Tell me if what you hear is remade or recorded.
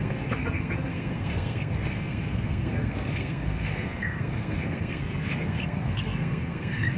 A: remade